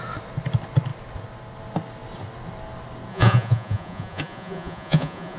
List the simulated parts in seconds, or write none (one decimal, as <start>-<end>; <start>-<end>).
3.1-5.4